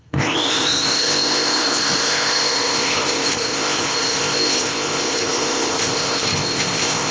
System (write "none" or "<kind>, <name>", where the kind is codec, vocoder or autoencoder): codec, ZipCodec